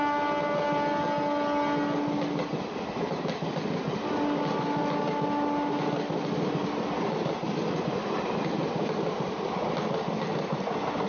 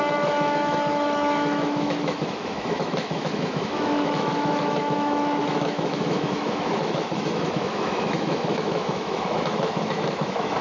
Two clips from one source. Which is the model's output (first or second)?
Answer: second